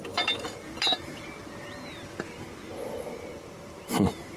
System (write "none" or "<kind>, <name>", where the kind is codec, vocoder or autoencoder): none